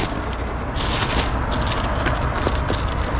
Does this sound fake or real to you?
real